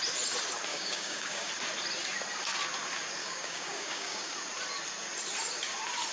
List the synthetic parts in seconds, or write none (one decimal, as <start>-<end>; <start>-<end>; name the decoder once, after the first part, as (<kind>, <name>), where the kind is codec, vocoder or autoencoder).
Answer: 0.7-1.5 (codec, DAC); 3.2-4.3